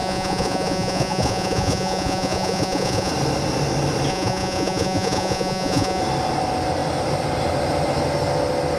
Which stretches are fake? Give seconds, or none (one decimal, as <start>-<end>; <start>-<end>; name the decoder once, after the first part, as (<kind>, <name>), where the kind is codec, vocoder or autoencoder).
0.0-3.1 (vocoder, Vocos); 4.1-6.0